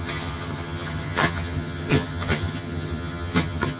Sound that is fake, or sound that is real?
fake